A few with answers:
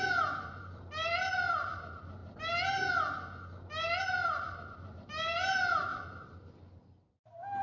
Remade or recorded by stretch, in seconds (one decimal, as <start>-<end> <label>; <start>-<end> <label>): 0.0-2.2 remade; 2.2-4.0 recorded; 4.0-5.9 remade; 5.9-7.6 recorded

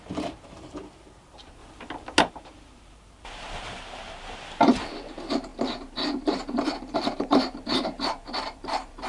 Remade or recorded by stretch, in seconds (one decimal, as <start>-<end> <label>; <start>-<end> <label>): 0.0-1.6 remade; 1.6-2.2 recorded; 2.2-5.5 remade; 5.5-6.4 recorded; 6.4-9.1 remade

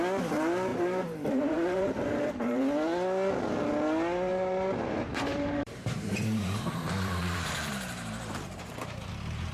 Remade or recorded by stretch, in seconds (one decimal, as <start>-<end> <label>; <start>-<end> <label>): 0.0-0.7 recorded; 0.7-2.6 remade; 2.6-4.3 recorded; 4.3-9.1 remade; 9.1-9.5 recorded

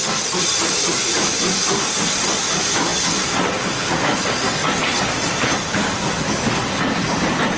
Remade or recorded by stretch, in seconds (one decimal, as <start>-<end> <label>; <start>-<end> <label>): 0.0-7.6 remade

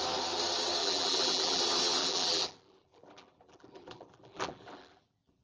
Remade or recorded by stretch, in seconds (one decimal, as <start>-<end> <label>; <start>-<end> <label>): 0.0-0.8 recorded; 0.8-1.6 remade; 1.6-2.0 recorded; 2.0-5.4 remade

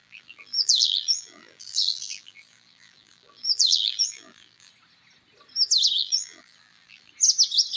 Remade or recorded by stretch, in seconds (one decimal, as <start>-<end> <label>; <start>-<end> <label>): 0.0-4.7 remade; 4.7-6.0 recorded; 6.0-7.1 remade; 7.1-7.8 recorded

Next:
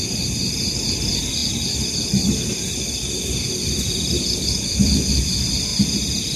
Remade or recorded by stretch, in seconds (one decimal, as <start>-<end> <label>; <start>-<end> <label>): 0.0-1.4 recorded; 1.4-5.2 remade; 5.2-6.4 recorded

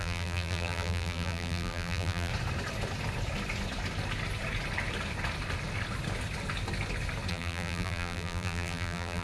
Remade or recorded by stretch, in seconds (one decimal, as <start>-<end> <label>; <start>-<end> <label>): 0.0-2.3 remade; 2.3-7.3 recorded; 7.3-9.2 remade